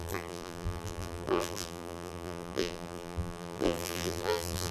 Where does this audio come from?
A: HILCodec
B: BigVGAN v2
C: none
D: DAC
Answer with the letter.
B